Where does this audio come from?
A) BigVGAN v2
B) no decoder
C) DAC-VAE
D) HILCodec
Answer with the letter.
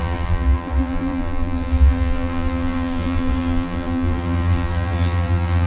A